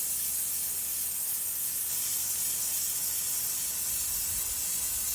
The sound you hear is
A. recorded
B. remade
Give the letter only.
A